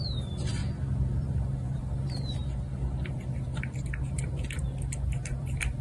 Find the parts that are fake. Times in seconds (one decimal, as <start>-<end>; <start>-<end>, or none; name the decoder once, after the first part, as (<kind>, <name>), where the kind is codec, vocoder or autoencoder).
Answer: 0.0-0.6 (vocoder, BigVGAN v2); 1.1-2.4; 3.0-3.5; 4.0-5.8